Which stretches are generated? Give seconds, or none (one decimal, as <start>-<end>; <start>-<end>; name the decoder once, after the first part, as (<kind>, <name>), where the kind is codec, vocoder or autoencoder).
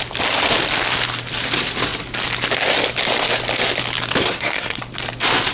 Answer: 4.2-4.8 (codec, SNAC)